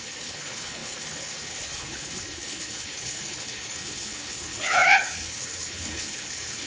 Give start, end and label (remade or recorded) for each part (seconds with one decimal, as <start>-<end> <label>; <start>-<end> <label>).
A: 0.0-6.7 remade